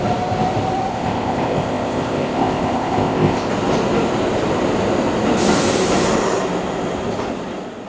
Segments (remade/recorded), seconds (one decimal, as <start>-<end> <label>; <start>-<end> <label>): 0.0-0.9 recorded; 0.9-3.5 remade; 3.5-7.9 recorded